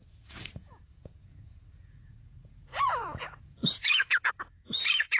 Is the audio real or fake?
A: fake